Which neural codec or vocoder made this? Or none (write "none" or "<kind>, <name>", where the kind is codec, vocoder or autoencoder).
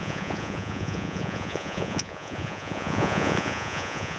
vocoder, Vocos